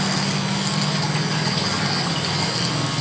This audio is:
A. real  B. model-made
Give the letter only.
A